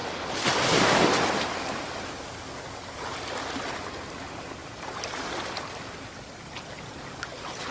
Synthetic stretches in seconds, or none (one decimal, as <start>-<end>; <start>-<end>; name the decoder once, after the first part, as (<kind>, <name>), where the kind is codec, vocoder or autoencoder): 4.6-5.3 (vocoder, BigVGAN v2)